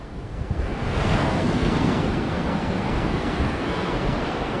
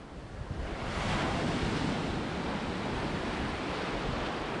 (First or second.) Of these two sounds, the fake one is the first